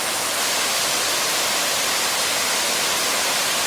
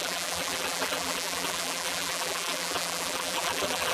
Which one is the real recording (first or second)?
first